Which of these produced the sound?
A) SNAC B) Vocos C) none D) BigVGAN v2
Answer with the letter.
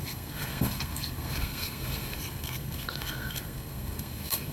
A